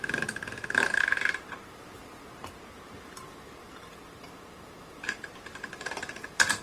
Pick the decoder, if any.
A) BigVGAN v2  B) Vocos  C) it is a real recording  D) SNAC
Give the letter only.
A